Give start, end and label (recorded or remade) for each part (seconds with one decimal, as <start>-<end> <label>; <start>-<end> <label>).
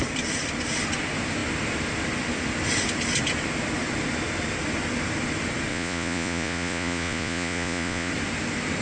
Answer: 0.0-5.7 recorded; 5.7-8.1 remade; 8.1-8.8 recorded